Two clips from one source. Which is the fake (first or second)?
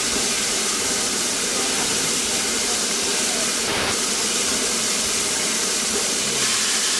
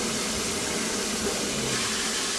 first